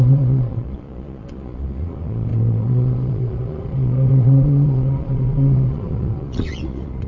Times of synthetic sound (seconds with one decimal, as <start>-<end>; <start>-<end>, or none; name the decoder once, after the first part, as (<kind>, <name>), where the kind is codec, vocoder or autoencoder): 0.0-7.1 (vocoder, Vocos)